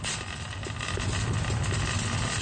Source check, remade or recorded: recorded